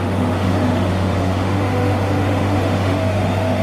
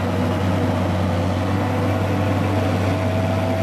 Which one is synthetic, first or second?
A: first